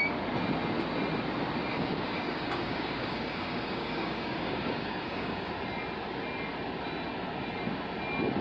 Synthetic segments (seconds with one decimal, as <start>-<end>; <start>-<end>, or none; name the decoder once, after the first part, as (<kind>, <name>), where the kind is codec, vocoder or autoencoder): 1.7-5.5 (codec, DAC)